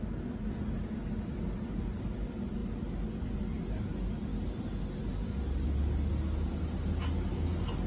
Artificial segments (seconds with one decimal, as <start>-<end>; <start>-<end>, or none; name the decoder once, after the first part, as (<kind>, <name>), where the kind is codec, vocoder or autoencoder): none